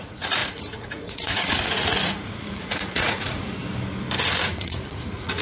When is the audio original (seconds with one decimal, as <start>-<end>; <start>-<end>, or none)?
3.6-4.3